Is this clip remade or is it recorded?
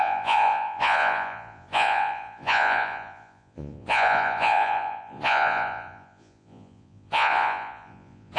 remade